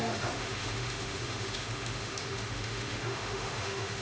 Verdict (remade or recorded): remade